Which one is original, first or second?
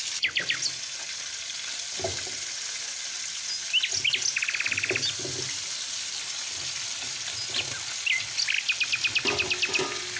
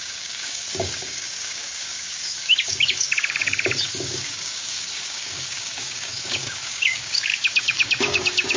first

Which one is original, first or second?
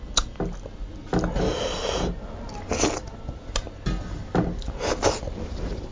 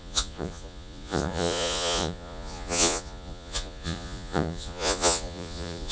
first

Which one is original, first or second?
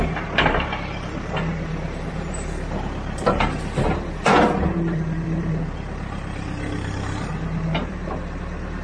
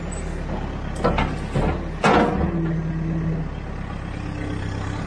second